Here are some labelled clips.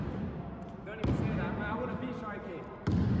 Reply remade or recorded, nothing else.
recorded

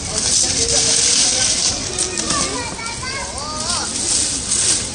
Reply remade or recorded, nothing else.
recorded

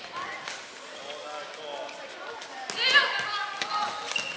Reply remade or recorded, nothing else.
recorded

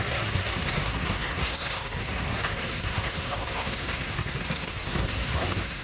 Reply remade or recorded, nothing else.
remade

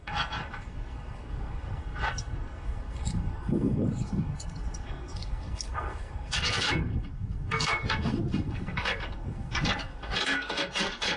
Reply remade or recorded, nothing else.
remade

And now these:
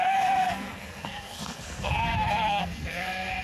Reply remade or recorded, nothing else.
remade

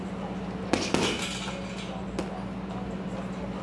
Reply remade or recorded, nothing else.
recorded